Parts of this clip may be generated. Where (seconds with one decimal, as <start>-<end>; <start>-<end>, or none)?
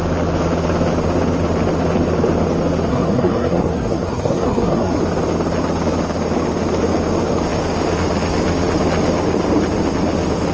2.9-5.0